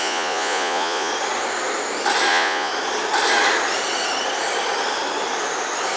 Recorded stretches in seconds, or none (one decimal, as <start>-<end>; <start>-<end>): 1.1-2.3; 2.7-6.0